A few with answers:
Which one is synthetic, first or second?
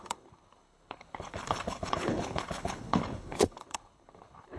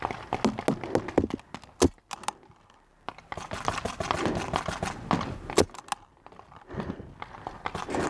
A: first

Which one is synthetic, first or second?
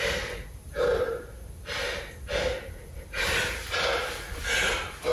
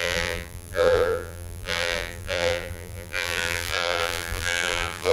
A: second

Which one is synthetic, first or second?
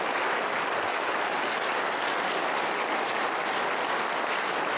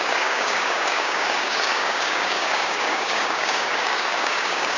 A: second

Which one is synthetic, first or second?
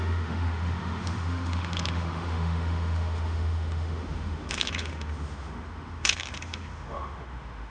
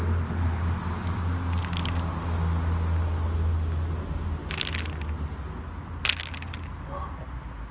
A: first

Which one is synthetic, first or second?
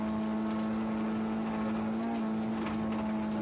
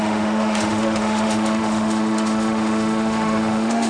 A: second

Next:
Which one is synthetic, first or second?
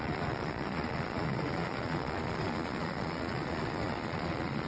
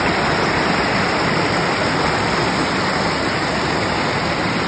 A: first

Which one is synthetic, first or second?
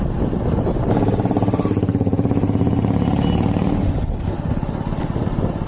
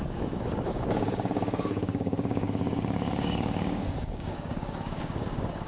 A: second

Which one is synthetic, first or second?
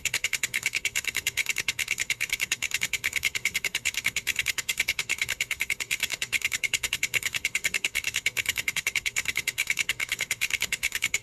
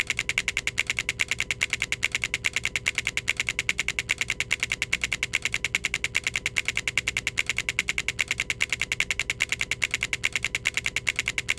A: first